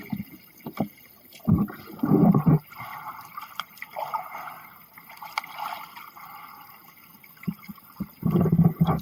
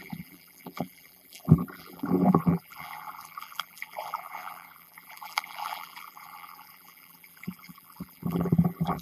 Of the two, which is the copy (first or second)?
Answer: second